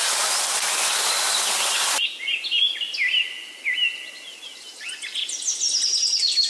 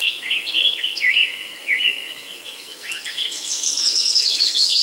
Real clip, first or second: first